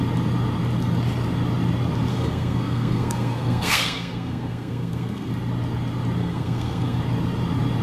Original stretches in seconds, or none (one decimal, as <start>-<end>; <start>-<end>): 0.0-2.1; 5.3-6.2; 7.0-7.8